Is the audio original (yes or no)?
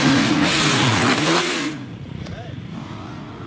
no